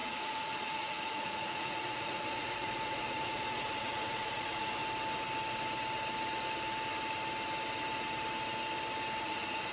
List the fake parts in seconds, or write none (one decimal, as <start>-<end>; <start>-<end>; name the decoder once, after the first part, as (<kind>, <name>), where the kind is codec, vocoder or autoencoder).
0.0-4.8 (vocoder, Vocos); 9.2-9.7